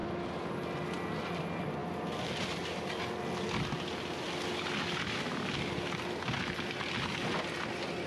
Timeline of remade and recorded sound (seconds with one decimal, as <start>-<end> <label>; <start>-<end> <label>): 0.0-1.2 remade; 1.2-8.1 recorded

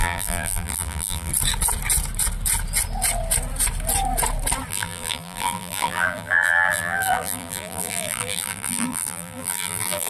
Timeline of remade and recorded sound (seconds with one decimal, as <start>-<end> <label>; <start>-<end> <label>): 0.0-1.3 remade; 1.3-4.7 recorded; 4.7-10.1 remade